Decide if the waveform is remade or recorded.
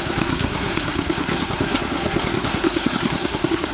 remade